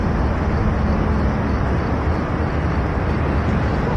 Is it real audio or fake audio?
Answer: real